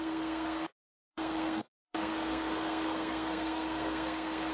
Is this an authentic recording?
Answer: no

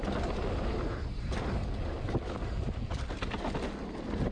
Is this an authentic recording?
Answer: yes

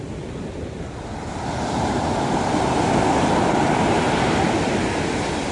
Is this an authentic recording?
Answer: yes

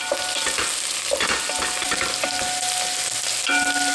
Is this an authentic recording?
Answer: yes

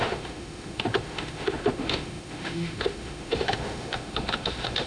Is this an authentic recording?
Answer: no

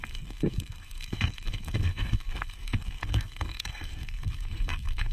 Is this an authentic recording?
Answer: no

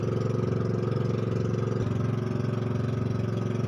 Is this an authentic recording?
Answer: yes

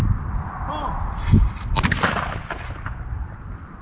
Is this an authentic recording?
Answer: yes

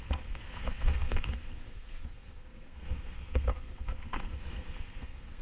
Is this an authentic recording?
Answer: no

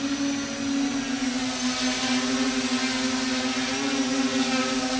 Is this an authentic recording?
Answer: yes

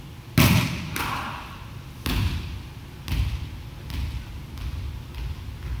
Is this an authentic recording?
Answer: yes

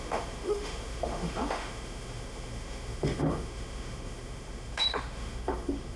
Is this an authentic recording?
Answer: no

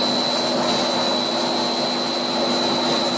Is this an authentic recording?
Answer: yes